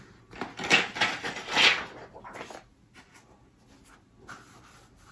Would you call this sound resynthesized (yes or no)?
no